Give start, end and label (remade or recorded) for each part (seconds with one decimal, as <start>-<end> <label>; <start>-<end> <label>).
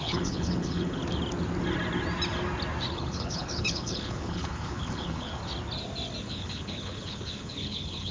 0.0-1.0 remade; 1.0-2.9 recorded; 2.9-5.4 remade; 5.4-6.2 recorded; 6.2-8.1 remade